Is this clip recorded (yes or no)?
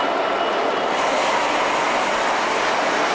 yes